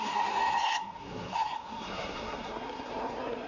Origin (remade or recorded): remade